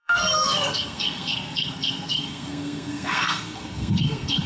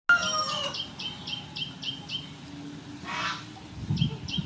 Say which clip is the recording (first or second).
second